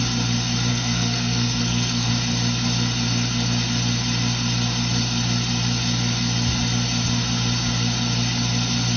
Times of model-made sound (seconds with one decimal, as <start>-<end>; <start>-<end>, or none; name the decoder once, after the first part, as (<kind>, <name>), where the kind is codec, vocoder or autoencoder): 0.7-2.1 (codec, SNAC)